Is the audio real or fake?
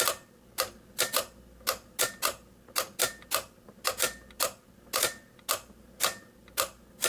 real